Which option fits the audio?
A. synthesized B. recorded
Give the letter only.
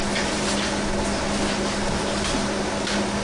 B